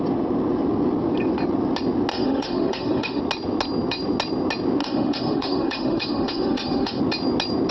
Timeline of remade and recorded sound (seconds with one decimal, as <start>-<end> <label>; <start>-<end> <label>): 0.0-2.1 recorded; 2.1-3.2 remade; 3.2-4.8 recorded; 4.8-7.0 remade; 7.0-7.7 recorded